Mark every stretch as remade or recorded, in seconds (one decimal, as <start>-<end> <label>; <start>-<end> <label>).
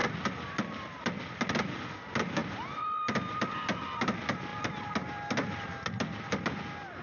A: 0.0-7.0 recorded